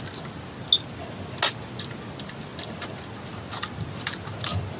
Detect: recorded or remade recorded